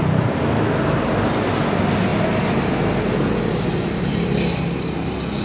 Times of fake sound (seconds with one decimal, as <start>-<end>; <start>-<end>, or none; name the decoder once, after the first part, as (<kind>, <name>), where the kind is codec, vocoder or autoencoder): none